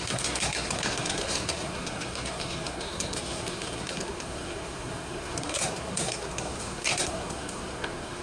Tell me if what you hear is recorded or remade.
remade